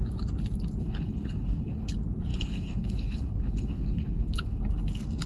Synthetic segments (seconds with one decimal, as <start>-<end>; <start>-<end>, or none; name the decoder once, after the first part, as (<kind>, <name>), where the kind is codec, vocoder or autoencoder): 0.8-1.9 (codec, HILCodec); 2.3-4.6